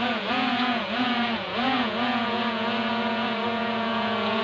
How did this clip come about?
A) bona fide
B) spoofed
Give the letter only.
B